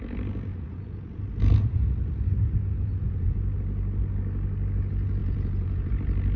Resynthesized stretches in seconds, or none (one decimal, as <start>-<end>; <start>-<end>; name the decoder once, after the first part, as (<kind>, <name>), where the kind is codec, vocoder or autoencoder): 0.5-1.2 (vocoder, Vocos); 2.3-3.3; 5.2-5.9